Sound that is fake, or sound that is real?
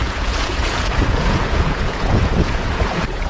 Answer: fake